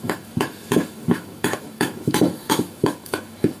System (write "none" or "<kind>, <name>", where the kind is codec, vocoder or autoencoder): autoencoder, DAC-VAE